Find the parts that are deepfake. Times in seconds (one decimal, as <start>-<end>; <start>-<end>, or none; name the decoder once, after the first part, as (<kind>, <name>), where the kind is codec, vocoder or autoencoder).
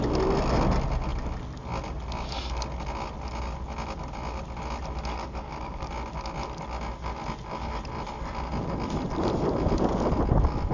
5.1-5.9 (codec, DAC)